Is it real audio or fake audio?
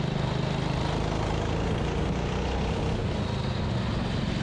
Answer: real